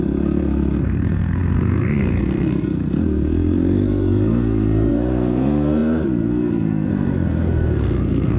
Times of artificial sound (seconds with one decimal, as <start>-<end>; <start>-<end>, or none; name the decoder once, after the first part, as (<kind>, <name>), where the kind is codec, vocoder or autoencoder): 0.0-8.4 (codec, SNAC)